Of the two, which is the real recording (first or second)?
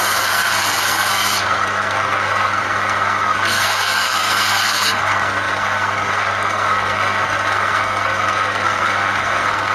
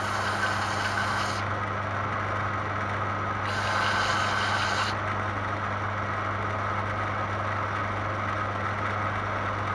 second